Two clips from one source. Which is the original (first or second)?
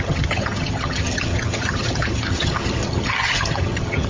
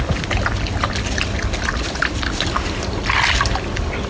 second